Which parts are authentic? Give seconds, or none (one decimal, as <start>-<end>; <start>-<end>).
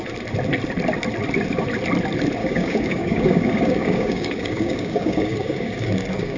0.0-2.4